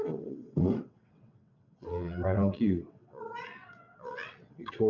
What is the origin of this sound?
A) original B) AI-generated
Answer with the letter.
B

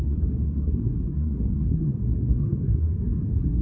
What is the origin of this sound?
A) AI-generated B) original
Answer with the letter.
A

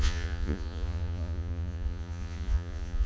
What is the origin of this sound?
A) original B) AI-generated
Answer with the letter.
B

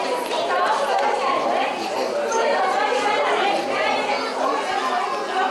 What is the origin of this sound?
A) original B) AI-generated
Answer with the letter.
A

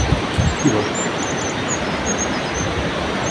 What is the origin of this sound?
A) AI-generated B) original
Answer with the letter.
B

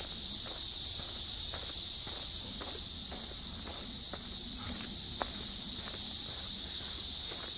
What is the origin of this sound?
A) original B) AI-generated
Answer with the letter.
A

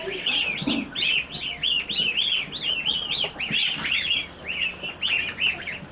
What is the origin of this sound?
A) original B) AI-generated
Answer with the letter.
A